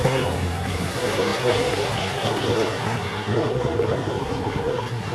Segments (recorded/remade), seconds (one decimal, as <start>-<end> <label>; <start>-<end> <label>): 0.0-5.1 remade